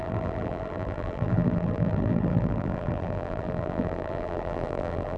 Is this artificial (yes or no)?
yes